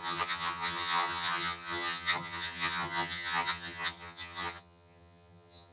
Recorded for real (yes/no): no